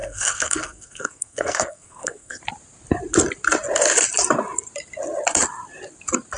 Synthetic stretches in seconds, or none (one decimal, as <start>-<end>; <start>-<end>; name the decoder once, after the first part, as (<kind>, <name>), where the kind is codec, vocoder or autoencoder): 0.0-2.4 (codec, SNAC)